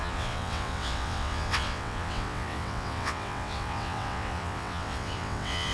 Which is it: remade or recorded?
remade